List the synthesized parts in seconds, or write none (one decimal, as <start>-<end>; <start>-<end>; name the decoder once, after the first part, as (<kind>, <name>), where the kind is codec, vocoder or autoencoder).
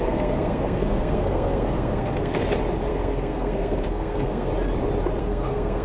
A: 0.0-2.4 (codec, SNAC); 2.9-4.5; 5.2-5.8